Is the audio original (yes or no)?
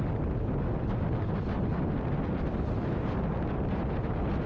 yes